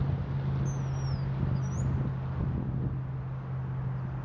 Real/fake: real